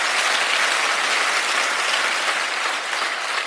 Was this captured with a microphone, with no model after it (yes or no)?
yes